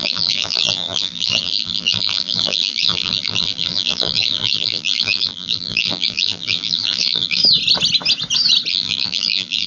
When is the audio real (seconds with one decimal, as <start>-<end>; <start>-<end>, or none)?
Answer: 7.4-8.7